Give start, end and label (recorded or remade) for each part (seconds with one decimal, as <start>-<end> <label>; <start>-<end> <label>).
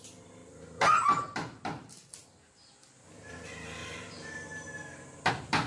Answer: 0.0-5.7 recorded